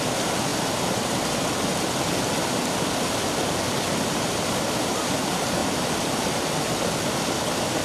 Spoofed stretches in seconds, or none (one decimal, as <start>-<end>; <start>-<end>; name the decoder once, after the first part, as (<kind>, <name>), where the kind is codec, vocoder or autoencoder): none